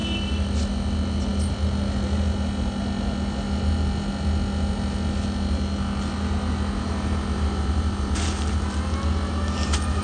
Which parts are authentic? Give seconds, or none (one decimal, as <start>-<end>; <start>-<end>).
0.0-10.0